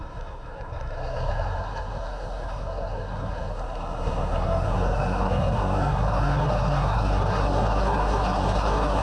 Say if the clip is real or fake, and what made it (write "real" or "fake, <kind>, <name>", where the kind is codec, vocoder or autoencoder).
fake, codec, SNAC